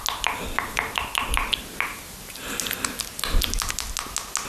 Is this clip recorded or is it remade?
recorded